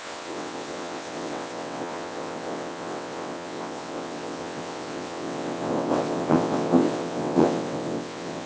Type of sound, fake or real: fake